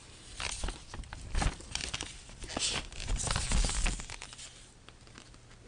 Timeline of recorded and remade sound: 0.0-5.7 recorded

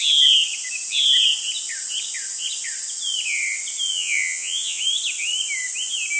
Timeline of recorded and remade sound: 0.0-3.9 recorded; 3.9-4.8 remade; 4.8-6.2 recorded

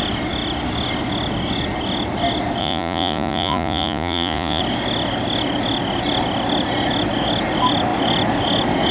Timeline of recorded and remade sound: 0.0-2.6 recorded; 2.6-4.6 remade; 4.6-8.9 recorded

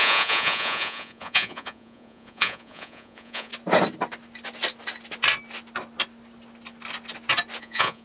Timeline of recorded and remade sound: 0.0-3.5 remade; 3.5-7.6 recorded; 7.6-8.0 remade

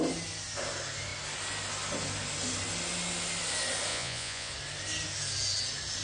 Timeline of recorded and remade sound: 0.0-3.9 recorded; 3.9-4.5 remade; 4.5-6.0 recorded